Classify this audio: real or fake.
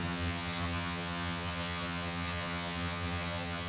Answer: fake